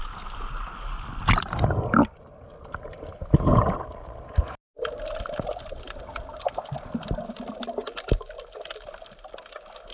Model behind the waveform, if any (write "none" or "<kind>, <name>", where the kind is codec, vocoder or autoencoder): none